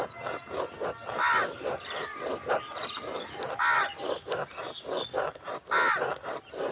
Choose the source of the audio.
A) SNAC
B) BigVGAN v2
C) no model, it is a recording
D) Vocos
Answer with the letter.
C